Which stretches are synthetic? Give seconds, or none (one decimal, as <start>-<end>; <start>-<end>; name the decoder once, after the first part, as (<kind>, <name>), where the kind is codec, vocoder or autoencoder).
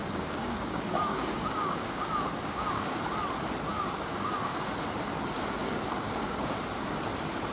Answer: 0.0-3.0 (codec, DAC); 3.7-4.6; 5.6-6.6